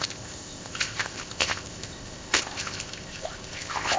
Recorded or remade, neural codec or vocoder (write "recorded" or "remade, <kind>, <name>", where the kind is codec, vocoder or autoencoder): remade, codec, ZipCodec